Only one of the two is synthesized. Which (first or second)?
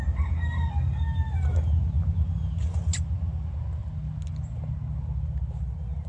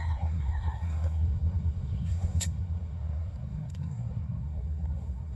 second